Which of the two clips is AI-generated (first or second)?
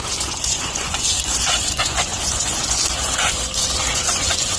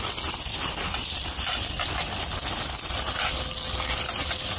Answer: first